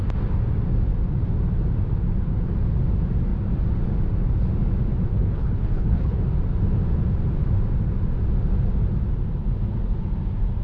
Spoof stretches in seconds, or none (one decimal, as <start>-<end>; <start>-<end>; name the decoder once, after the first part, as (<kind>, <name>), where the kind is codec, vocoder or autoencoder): 5.1-6.2 (codec, HILCodec)